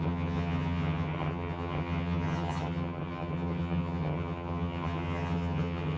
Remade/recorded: remade